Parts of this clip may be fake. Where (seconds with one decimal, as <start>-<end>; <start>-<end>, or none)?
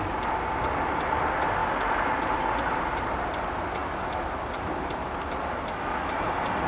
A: none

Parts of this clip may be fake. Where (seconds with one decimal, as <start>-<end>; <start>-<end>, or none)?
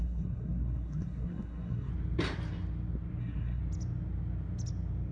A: 0.0-1.9; 3.2-3.6